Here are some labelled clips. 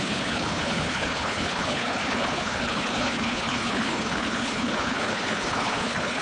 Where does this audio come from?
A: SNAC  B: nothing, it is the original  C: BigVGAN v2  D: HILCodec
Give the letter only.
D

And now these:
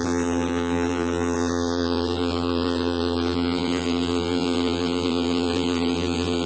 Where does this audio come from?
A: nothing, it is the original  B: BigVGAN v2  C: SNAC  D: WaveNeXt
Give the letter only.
B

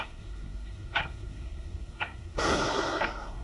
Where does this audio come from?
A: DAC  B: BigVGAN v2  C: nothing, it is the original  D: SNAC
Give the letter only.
D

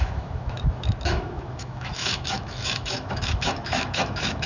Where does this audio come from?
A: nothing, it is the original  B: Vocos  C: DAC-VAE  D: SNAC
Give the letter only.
C